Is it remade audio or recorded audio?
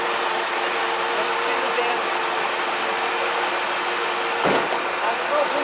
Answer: recorded